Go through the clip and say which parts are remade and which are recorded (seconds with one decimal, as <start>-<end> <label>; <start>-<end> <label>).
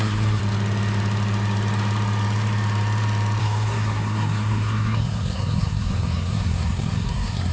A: 0.0-0.4 remade; 0.4-3.4 recorded; 3.4-7.5 remade